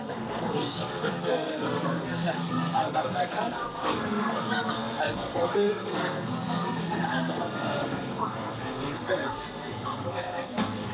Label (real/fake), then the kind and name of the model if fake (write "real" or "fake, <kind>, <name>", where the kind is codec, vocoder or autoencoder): fake, codec, SNAC